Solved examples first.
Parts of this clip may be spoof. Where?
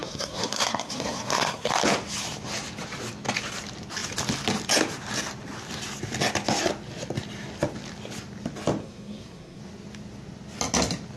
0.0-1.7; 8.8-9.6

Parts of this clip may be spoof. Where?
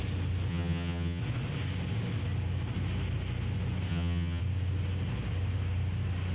0.5-1.2; 3.9-4.4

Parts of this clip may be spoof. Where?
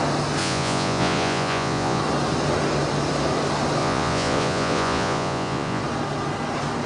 0.4-2.0; 3.8-5.8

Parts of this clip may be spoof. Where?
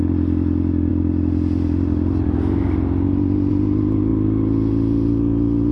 none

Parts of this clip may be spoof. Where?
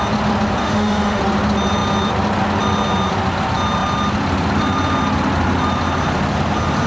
0.6-1.2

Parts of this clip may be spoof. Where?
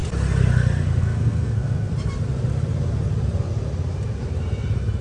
1.0-1.9